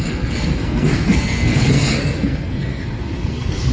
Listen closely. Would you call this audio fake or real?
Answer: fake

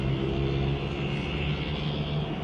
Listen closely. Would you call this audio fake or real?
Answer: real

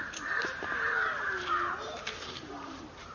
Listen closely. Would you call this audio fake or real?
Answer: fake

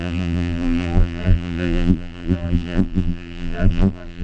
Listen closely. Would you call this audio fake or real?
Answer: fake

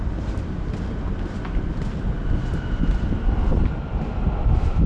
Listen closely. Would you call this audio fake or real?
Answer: real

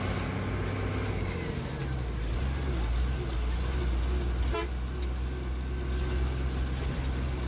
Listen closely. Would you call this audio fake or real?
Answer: real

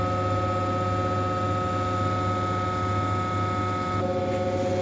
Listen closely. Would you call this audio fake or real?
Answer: real